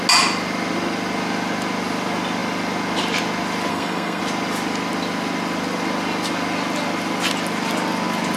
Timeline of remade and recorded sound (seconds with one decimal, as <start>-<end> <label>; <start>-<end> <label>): 0.0-3.7 recorded; 3.7-4.2 remade; 4.2-8.4 recorded